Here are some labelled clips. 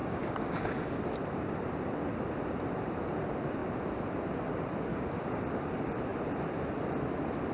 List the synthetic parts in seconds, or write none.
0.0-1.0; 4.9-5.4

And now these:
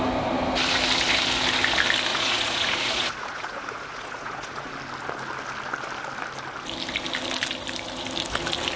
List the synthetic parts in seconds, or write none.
2.1-4.7

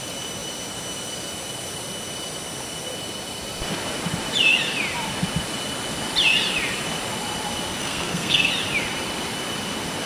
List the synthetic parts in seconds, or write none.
7.8-8.5

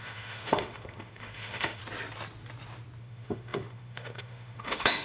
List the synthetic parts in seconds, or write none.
0.0-1.8; 3.0-5.0

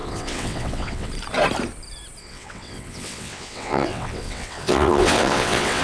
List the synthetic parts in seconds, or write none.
0.0-1.1; 2.2-5.8

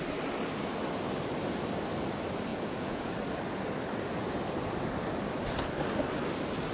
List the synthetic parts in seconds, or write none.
2.5-3.1

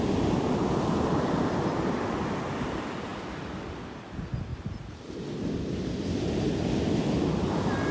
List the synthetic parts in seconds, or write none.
none

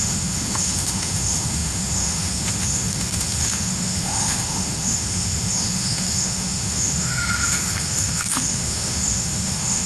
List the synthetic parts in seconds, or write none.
0.0-9.9